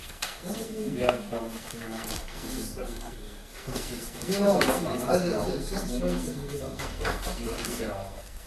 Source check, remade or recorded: remade